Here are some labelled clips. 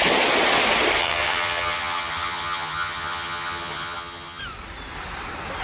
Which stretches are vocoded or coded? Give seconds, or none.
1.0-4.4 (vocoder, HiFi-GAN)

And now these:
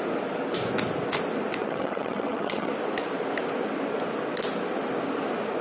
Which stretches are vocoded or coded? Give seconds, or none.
1.6-2.7 (vocoder, HiFi-GAN)